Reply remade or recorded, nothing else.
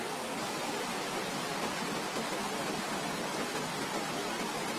recorded